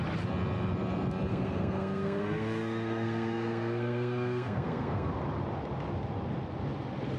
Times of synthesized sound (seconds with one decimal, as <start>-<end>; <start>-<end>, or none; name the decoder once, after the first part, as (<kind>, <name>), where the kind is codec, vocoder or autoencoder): 1.3-5.1 (codec, SNAC)